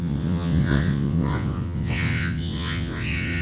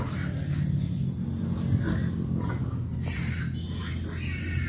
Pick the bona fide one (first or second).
second